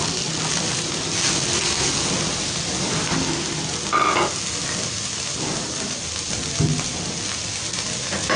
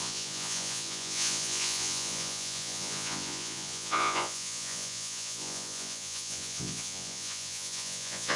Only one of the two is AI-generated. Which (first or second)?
second